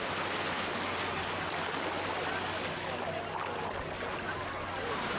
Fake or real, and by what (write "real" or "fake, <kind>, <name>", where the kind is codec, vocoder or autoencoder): real